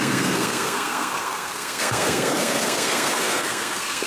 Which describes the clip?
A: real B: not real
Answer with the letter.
B